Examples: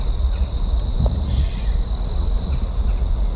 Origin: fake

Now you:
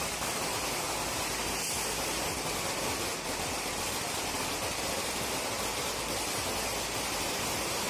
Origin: real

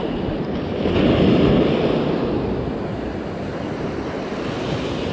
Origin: real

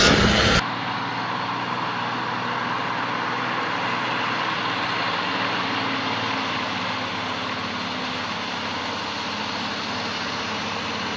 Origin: real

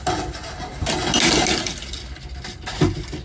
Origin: real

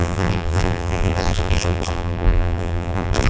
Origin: fake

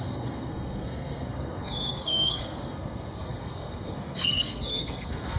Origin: fake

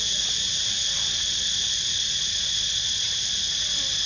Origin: real